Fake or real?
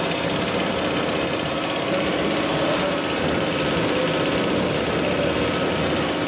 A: real